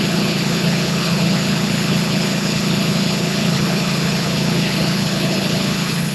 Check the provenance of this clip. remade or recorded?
remade